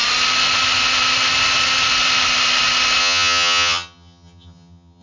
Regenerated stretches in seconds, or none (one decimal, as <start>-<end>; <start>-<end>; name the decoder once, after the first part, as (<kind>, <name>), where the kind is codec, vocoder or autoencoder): 3.0-5.0 (vocoder, HiFi-GAN)